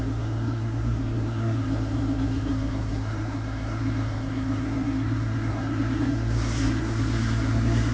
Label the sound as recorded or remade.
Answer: remade